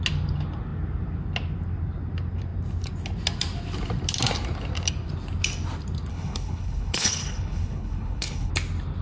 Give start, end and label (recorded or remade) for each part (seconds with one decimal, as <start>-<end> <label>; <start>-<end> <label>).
0.0-6.1 recorded; 6.1-8.5 remade; 8.5-9.0 recorded